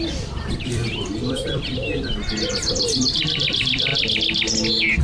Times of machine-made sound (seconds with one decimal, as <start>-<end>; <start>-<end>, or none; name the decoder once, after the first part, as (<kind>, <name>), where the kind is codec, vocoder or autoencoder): 0.0-1.7 (vocoder, BigVGAN v2); 2.5-3.9